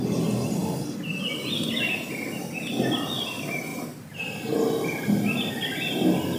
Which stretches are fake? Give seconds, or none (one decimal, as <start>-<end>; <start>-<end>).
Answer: none